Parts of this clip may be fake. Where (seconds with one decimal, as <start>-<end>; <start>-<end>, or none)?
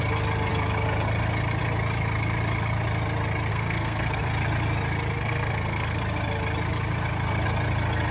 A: 3.5-4.2; 5.2-6.0